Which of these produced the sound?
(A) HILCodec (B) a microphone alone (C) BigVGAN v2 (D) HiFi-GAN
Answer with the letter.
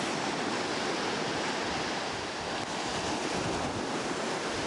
B